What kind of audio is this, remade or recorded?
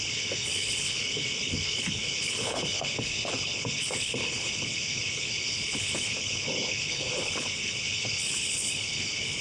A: remade